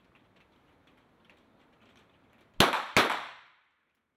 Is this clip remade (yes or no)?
no